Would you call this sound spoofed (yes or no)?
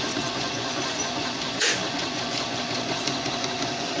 yes